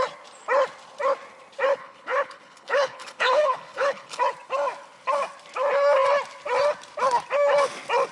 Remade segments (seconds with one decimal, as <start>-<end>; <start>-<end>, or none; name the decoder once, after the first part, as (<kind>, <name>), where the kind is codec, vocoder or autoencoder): 1.8-4.2 (codec, HILCodec)